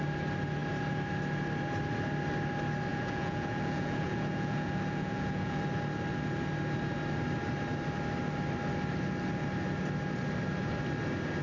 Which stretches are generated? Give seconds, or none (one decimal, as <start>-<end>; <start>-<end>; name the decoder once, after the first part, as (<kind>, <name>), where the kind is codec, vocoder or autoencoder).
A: 2.9-5.6 (vocoder, Vocos)